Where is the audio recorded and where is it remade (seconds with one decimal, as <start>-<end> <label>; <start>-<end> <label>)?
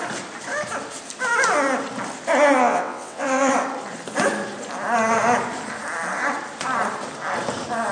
0.0-2.6 recorded; 2.6-3.5 remade; 3.5-7.9 recorded